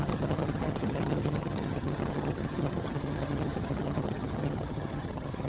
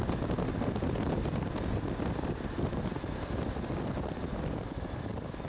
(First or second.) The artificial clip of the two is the first